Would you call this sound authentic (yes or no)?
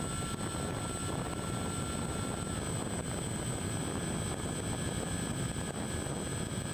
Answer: yes